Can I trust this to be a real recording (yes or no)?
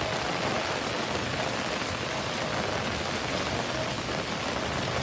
yes